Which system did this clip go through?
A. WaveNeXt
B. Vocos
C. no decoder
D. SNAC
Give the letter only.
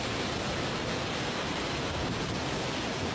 C